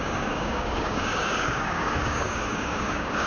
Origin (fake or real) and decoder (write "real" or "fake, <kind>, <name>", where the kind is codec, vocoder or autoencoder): fake, codec, DAC